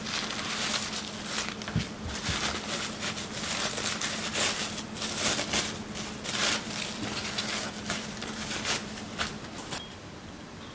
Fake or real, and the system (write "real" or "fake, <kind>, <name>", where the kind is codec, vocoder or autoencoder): real